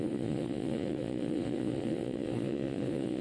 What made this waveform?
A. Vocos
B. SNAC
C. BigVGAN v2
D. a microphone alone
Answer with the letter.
A